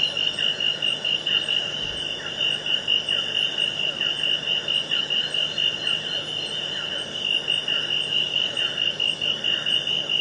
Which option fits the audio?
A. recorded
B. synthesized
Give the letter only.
A